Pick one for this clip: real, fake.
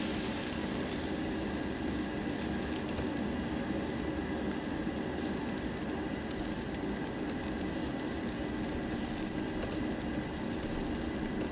real